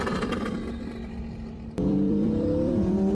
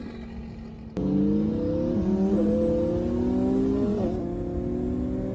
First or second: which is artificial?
first